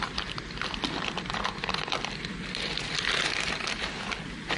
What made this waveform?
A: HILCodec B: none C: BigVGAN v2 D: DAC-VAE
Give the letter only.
C